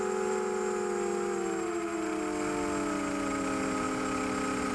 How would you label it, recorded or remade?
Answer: recorded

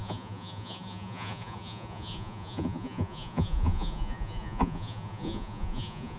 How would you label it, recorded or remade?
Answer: remade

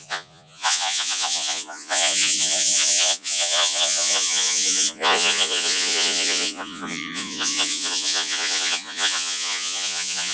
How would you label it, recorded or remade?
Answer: remade